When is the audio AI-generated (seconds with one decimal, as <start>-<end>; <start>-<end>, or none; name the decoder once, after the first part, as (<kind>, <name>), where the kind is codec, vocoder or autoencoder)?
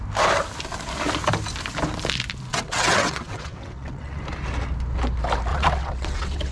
2.5-4.2 (vocoder, WaveNeXt); 5.5-6.5